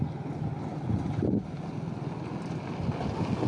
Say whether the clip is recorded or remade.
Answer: recorded